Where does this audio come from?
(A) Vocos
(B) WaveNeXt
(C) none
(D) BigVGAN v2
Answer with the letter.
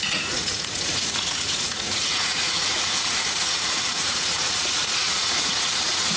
A